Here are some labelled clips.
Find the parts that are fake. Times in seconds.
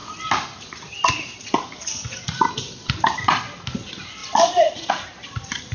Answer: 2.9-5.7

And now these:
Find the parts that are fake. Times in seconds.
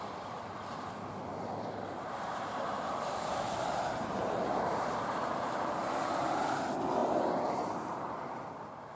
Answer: 1.3-6.4; 7.0-8.4